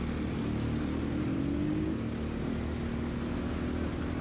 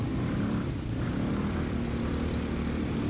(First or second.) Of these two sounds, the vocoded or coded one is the second